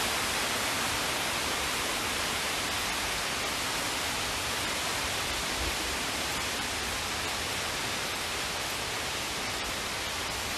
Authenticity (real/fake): real